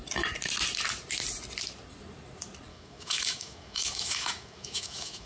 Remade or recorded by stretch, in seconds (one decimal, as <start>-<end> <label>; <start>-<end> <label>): 0.0-2.7 recorded; 2.7-5.3 remade